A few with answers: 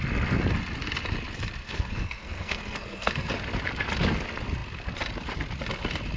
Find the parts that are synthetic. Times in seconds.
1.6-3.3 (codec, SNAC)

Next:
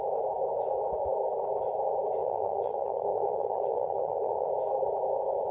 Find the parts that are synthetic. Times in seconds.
2.2-4.5 (vocoder, HiFi-GAN)

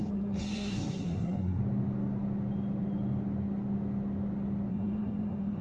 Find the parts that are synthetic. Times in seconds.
0.0-1.6 (codec, SNAC); 4.7-5.6